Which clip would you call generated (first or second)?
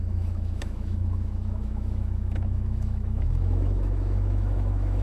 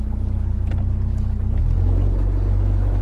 first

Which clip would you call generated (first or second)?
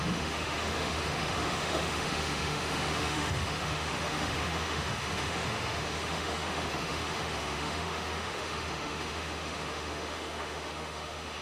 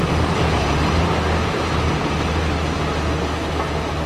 first